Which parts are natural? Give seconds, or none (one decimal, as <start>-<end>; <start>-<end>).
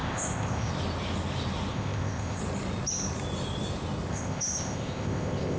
0.7-1.7; 2.4-4.1